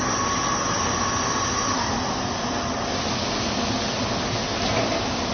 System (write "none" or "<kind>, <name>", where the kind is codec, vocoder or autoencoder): none